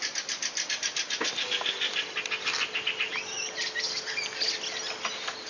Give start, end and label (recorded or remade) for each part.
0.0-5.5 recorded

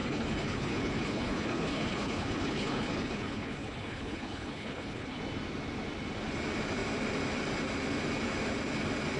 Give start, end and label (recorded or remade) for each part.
0.0-5.2 remade; 5.2-9.2 recorded

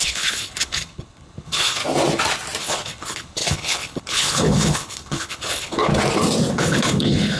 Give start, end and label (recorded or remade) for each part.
0.0-1.8 remade; 1.8-2.6 recorded; 2.6-5.9 remade; 5.9-6.5 recorded; 6.5-7.4 remade

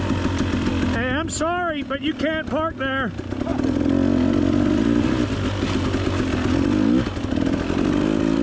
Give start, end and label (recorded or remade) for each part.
0.0-8.4 recorded

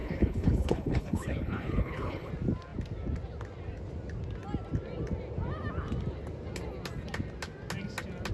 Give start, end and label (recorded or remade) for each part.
0.0-2.3 remade; 2.3-8.3 recorded

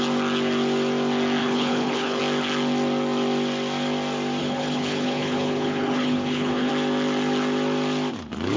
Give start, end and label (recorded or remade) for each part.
0.0-1.4 recorded; 1.4-2.2 remade; 2.2-4.4 recorded; 4.4-6.7 remade; 6.7-8.6 recorded

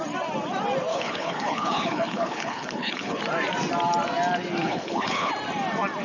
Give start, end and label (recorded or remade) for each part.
0.0-0.9 recorded; 0.9-3.2 remade; 3.2-4.6 recorded; 4.6-5.3 remade; 5.3-6.0 recorded

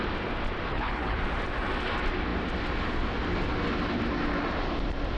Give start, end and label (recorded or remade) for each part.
0.0-0.7 recorded; 0.7-1.2 remade; 1.2-5.2 recorded